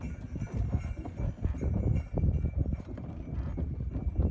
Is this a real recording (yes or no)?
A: yes